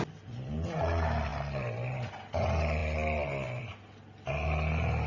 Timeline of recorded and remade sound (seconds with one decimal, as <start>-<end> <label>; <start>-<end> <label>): 0.0-5.1 recorded